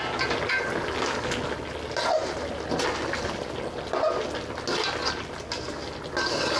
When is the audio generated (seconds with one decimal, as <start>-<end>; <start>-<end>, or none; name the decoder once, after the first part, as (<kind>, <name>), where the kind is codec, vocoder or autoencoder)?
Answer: none